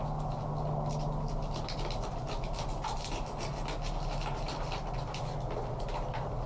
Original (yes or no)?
yes